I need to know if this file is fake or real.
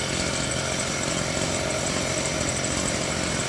real